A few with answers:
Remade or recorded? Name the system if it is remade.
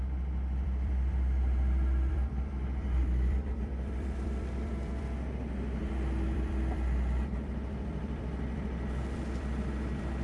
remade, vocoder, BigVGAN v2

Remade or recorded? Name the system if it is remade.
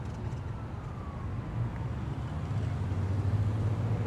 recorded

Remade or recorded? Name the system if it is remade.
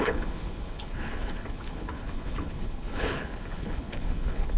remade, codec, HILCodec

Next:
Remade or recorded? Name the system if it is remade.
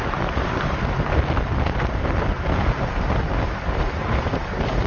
recorded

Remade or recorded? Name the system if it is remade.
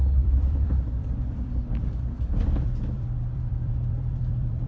remade, vocoder, BigVGAN v2